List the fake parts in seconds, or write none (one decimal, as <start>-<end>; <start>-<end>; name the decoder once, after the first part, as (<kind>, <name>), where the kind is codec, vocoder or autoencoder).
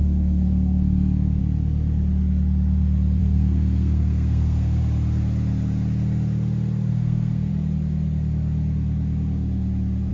0.0-1.4 (codec, SNAC); 3.2-4.8; 6.9-7.5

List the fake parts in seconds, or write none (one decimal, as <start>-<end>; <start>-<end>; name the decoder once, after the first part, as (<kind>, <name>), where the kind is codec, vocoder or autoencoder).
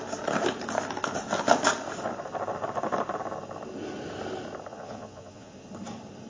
4.7-5.5 (vocoder, Vocos)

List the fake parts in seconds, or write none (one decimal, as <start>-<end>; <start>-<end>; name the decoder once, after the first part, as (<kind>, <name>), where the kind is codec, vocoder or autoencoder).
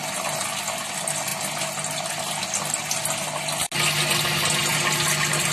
none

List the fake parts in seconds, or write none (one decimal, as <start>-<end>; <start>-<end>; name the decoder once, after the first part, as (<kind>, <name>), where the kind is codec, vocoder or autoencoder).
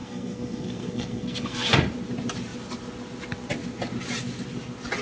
0.0-1.7 (codec, SNAC)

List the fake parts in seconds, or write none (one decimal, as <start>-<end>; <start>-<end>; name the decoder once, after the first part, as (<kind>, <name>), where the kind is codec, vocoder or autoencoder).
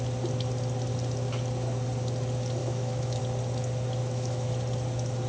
2.6-3.2 (autoencoder, DAC-VAE); 4.0-4.5